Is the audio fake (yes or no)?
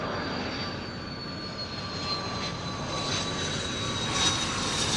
no